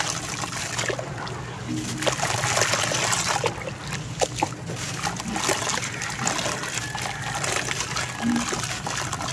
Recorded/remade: recorded